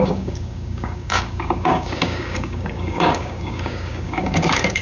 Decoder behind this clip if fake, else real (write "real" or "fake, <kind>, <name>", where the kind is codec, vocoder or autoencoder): fake, codec, DAC